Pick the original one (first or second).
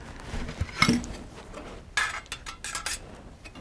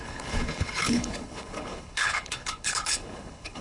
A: first